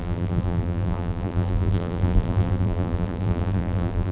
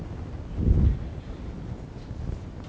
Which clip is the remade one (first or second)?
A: first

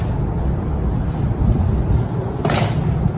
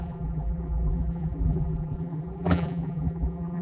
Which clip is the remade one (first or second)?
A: second